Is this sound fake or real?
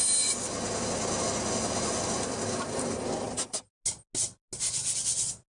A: real